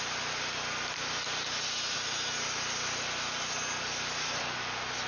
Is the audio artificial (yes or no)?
no